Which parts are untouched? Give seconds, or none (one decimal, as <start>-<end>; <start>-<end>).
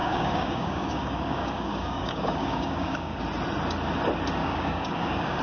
3.2-4.4